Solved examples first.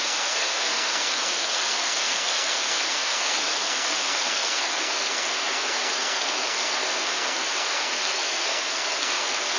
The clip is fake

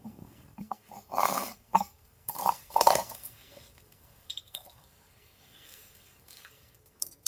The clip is fake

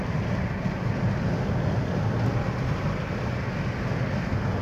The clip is real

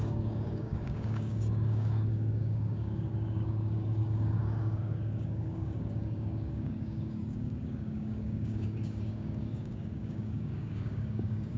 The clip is fake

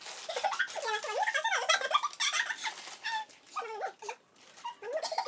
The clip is real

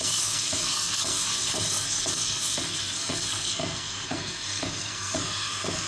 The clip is fake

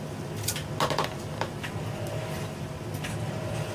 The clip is real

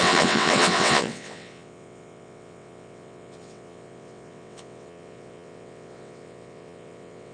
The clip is fake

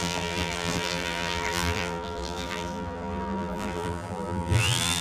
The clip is fake